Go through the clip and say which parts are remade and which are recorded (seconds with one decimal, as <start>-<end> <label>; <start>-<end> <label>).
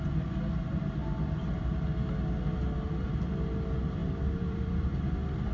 0.0-4.0 recorded; 4.0-4.9 remade; 4.9-5.5 recorded